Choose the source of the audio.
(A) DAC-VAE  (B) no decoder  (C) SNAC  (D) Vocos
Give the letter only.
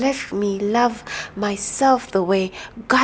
B